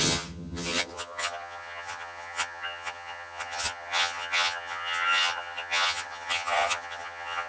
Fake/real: fake